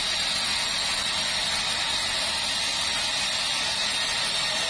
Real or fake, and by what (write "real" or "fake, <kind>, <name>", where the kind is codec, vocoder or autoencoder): real